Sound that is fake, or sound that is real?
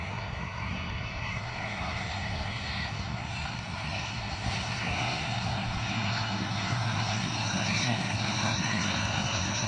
fake